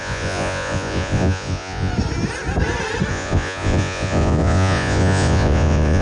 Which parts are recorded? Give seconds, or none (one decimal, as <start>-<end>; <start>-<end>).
1.9-3.1